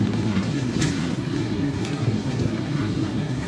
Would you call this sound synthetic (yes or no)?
yes